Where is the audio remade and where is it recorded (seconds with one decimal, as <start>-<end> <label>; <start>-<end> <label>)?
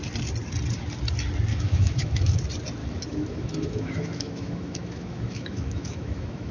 0.0-1.5 recorded; 1.5-2.4 remade; 2.4-2.8 recorded; 2.8-6.5 remade